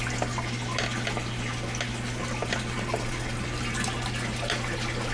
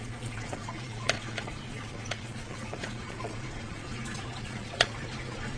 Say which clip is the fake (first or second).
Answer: second